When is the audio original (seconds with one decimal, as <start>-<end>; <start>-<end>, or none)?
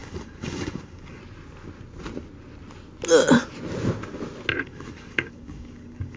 1.2-4.6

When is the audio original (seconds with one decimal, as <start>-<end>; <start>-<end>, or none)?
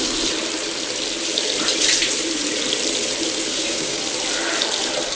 0.0-3.5; 4.0-5.1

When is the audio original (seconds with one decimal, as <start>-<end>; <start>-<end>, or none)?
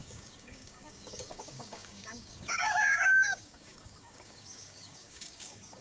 none